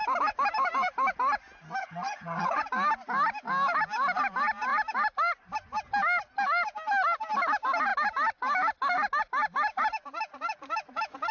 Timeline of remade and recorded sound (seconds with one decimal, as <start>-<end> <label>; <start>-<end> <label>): 0.0-1.8 recorded; 1.8-2.6 remade; 2.6-11.3 recorded